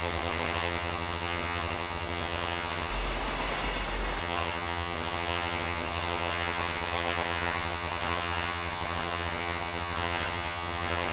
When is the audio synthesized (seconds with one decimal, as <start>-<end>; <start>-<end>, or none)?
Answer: 0.0-2.9; 4.2-11.1